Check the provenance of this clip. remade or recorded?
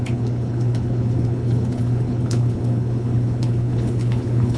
remade